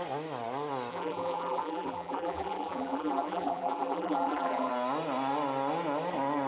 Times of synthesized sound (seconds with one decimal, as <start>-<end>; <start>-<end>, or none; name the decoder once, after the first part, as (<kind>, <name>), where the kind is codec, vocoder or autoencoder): 0.9-4.7 (vocoder, BigVGAN v2)